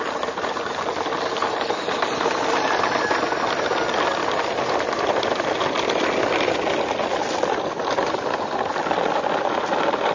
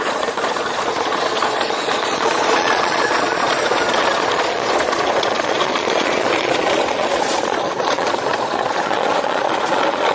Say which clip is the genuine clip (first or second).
first